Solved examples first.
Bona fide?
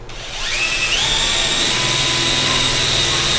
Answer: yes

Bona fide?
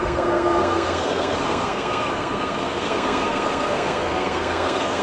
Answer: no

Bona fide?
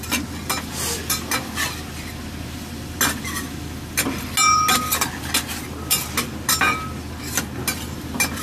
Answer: yes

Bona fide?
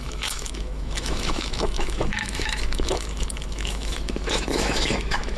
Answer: no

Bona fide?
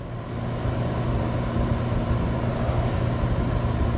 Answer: yes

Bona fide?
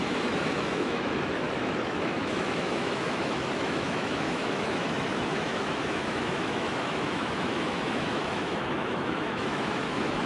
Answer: no